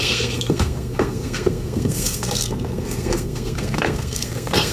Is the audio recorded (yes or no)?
no